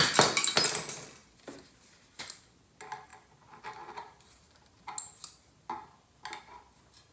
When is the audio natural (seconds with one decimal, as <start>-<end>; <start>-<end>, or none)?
0.0-7.1